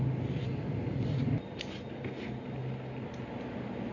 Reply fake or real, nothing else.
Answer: real